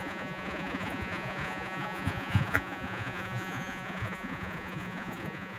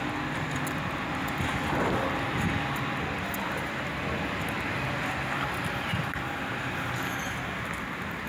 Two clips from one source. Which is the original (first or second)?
second